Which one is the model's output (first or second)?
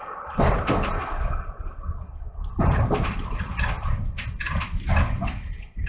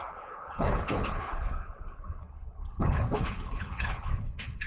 second